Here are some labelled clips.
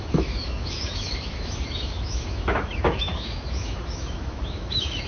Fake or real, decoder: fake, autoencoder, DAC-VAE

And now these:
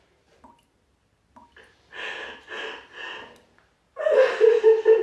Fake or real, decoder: real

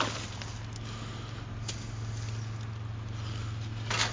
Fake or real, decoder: real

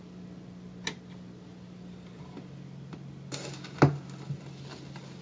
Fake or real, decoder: real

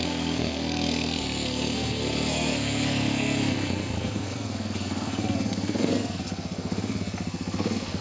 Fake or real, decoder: fake, codec, SNAC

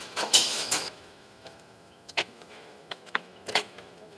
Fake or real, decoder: fake, autoencoder, DAC-VAE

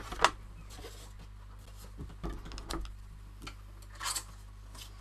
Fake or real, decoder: real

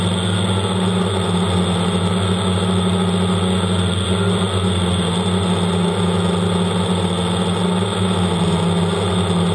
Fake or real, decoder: real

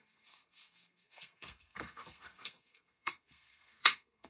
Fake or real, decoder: fake, codec, SNAC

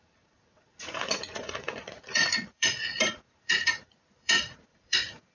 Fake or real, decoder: fake, vocoder, Vocos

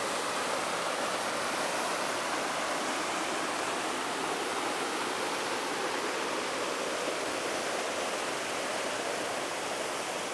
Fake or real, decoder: real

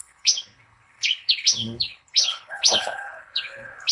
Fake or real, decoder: fake, codec, HILCodec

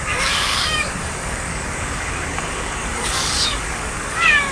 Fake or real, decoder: fake, codec, DAC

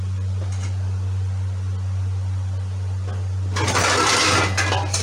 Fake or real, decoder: real